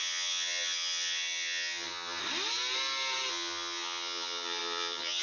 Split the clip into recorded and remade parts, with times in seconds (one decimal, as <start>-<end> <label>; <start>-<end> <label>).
0.0-2.2 remade; 2.2-3.3 recorded; 3.3-5.2 remade